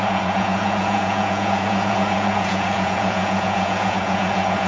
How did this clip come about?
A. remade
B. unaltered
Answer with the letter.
A